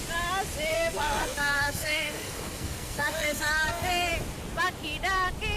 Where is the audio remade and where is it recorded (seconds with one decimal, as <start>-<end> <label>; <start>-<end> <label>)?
0.0-0.7 recorded; 0.7-4.1 remade; 4.1-5.6 recorded